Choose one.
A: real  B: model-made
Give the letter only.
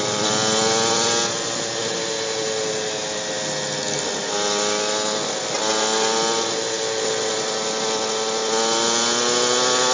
A